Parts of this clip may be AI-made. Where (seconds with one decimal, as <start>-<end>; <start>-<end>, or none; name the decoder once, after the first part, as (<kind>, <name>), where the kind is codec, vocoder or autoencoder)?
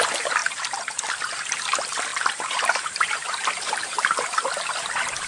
0.4-1.0 (vocoder, BigVGAN v2); 2.1-4.2